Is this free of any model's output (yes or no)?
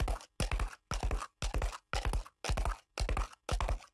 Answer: yes